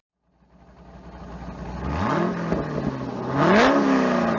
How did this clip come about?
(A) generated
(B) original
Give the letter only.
B